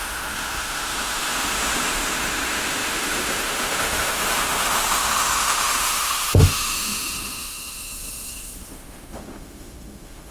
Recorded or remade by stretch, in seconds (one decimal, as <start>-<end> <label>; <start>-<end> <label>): 0.0-10.3 remade